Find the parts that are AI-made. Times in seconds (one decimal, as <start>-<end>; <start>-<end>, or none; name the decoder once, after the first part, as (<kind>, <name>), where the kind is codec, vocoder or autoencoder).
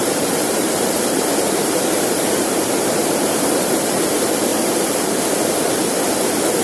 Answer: 0.0-4.0 (vocoder, BigVGAN v2); 4.5-5.2